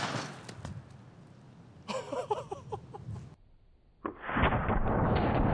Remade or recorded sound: recorded